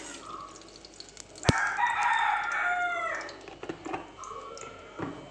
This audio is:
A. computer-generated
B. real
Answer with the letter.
B